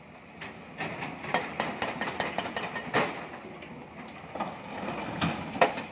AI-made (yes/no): no